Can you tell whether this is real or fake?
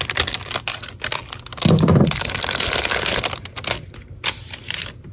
real